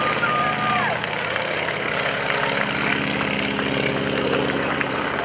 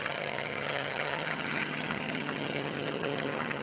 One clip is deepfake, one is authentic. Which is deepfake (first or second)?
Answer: second